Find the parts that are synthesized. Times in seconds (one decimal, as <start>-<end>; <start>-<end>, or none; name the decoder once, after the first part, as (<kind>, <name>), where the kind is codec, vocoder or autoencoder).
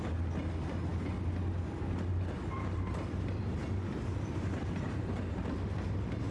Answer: 2.4-4.9 (vocoder, BigVGAN v2)